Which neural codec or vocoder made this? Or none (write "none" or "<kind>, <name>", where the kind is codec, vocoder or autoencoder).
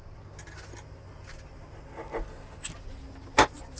none